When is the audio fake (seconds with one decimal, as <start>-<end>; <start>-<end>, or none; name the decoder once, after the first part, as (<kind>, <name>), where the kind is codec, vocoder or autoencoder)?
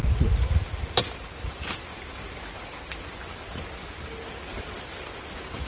0.0-3.4 (vocoder, BigVGAN v2)